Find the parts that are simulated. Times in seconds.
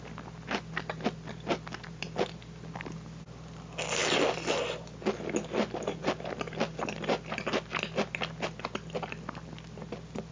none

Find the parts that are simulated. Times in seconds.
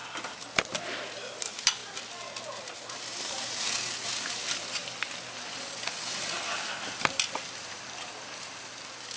none